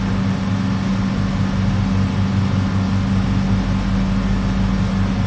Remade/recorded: recorded